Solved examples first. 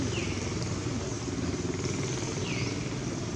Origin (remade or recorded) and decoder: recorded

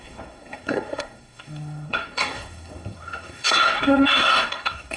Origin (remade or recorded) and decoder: remade, codec, SNAC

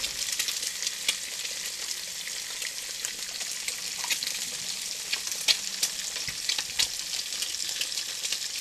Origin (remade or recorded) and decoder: recorded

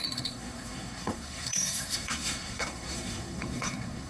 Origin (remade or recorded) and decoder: remade, codec, SNAC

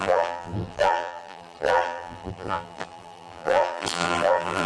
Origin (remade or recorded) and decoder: remade, vocoder, BigVGAN v2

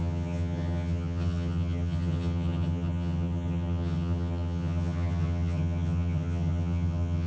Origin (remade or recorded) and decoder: remade, vocoder, HiFi-GAN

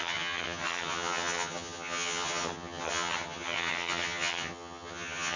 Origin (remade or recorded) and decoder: remade, vocoder, HiFi-GAN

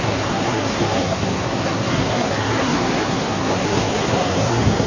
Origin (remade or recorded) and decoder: remade, codec, SNAC